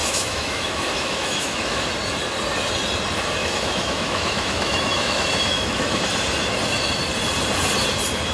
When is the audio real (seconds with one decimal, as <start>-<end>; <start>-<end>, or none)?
1.9-3.4; 6.0-8.3